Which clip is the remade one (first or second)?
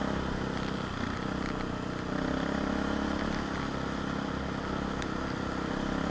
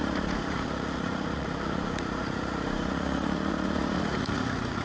second